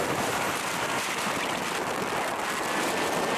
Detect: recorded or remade remade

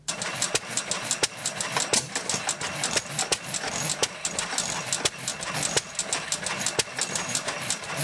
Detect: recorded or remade recorded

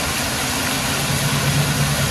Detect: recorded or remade recorded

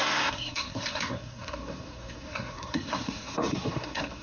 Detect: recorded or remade remade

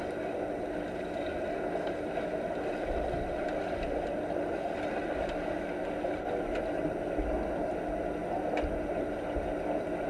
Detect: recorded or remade recorded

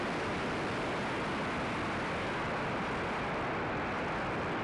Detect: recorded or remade recorded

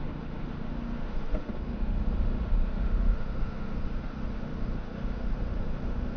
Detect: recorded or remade remade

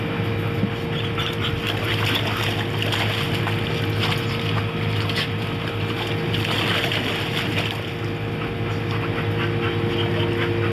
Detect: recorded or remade recorded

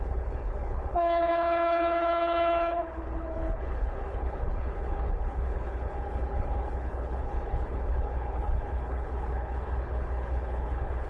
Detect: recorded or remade remade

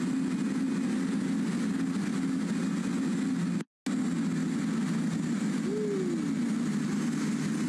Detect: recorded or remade recorded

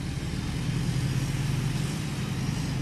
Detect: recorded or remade recorded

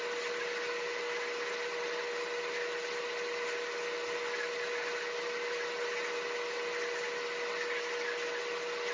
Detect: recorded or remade recorded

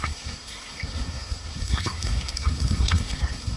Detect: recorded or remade remade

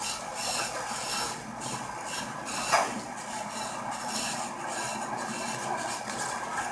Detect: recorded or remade recorded